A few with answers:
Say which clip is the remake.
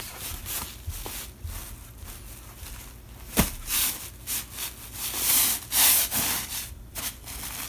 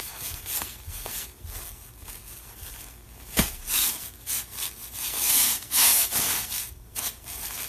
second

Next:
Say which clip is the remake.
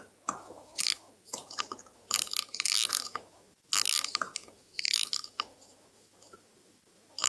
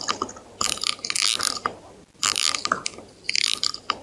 first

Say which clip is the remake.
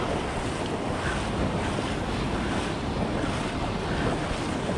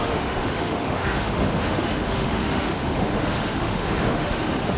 second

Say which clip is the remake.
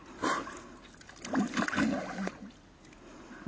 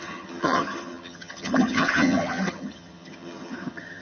second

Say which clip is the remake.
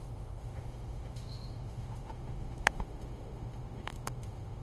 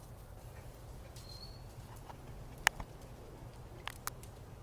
first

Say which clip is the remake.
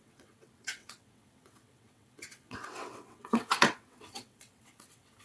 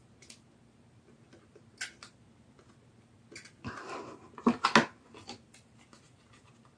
first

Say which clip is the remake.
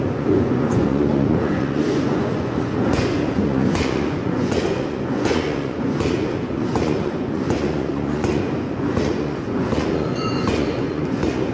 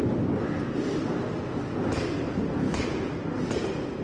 first